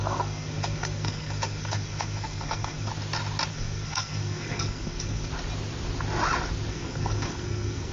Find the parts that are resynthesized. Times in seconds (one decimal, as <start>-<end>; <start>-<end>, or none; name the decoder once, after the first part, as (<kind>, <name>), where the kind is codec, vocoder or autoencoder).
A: 0.0-2.9 (codec, SNAC); 3.5-5.3; 6.7-7.9